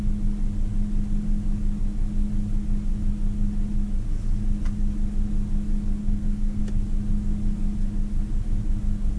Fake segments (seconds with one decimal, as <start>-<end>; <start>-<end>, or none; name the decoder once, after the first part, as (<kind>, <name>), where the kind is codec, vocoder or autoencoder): 6.0-6.6 (codec, SNAC)